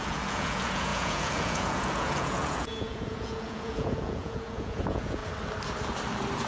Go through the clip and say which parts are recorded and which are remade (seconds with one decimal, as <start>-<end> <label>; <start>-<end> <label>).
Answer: 0.0-5.2 remade; 5.2-6.5 recorded